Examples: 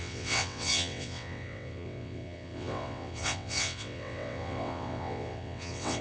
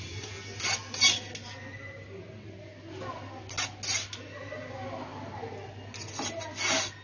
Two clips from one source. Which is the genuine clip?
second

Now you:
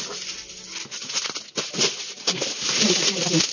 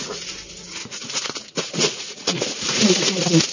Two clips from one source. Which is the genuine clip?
first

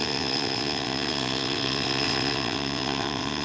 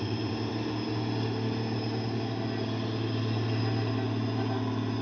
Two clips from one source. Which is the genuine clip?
second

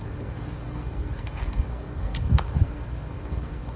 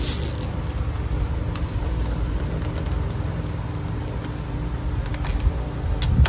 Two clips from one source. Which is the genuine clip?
second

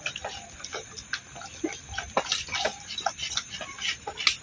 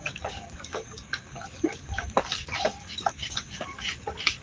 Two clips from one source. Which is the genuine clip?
first